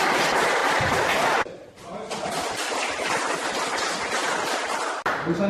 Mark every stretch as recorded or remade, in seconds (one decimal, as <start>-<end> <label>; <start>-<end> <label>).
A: 0.0-5.5 recorded